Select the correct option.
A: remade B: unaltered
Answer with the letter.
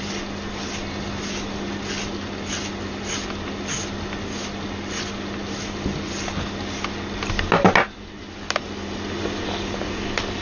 B